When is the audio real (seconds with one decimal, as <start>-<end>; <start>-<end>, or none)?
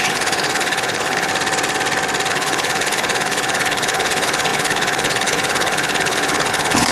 1.3-2.3